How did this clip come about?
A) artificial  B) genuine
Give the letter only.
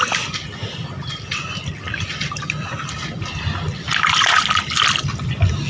B